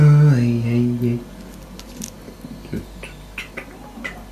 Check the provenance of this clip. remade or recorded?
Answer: recorded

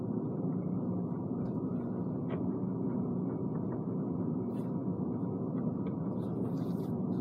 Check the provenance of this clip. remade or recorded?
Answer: recorded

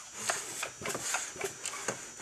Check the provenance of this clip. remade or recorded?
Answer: recorded